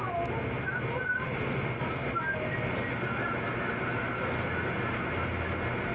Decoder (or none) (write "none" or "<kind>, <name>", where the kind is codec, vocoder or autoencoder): none